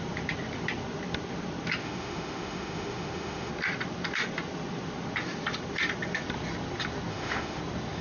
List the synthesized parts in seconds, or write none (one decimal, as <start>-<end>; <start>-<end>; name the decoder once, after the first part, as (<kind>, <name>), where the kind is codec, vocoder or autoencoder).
1.8-3.5 (autoencoder, DAC-VAE); 7.1-7.6